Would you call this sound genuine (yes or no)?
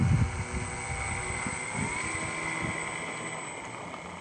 yes